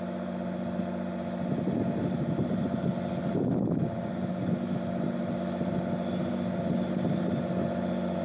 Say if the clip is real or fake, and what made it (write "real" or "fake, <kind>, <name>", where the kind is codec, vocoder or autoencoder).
real